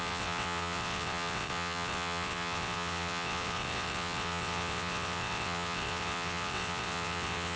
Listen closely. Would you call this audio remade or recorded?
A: remade